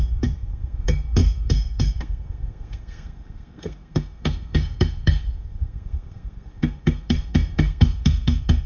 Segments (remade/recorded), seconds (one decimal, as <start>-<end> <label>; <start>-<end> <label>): 0.0-8.7 remade